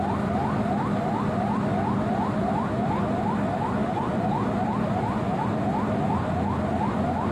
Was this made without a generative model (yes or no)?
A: yes